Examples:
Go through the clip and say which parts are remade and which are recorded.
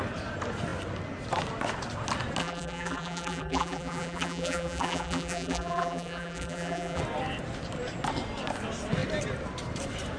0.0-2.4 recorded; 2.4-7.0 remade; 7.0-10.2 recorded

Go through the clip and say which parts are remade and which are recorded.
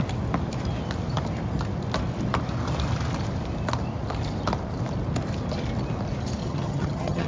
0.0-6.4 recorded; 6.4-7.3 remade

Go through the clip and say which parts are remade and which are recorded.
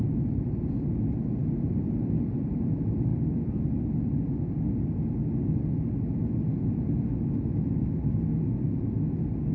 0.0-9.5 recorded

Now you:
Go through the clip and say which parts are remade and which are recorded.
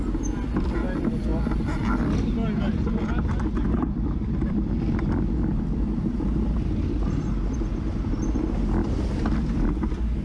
0.0-10.2 recorded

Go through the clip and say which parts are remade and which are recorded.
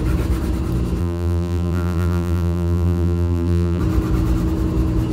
0.0-1.0 recorded; 1.0-3.8 remade; 3.8-5.1 recorded